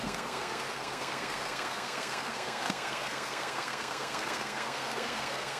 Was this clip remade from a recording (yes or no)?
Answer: yes